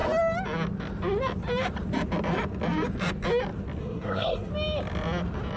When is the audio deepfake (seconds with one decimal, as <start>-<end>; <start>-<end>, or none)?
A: 3.8-4.5